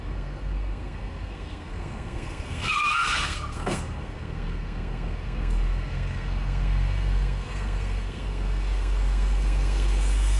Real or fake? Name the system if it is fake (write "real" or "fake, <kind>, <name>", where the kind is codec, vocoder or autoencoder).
fake, codec, SNAC